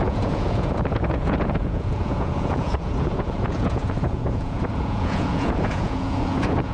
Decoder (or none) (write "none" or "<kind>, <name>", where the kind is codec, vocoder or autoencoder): vocoder, Vocos